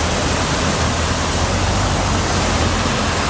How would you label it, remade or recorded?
recorded